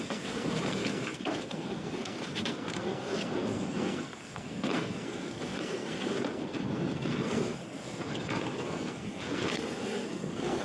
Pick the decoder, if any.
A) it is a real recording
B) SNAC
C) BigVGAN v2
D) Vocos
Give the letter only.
B